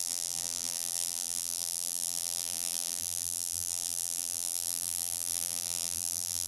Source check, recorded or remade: remade